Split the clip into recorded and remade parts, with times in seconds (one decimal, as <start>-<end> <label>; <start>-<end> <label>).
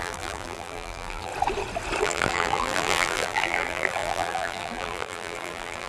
0.0-1.3 remade; 1.3-2.0 recorded; 2.0-5.9 remade